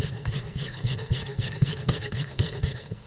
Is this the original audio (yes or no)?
no